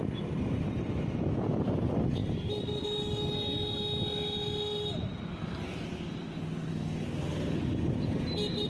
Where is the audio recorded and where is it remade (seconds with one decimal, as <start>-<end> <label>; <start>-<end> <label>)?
0.0-8.7 recorded